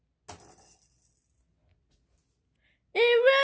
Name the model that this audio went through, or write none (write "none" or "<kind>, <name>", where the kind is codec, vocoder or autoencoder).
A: none